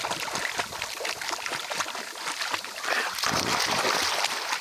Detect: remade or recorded recorded